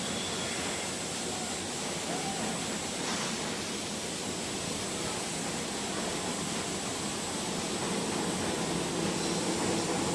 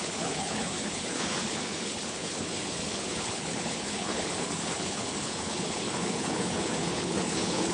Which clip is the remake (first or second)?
second